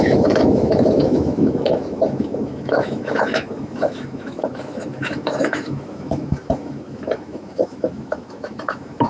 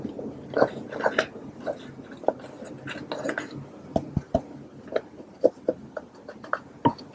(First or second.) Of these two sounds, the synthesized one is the first